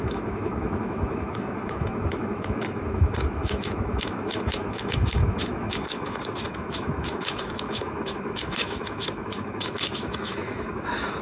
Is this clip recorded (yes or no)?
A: no